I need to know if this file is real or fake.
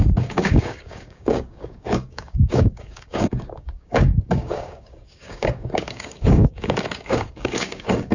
fake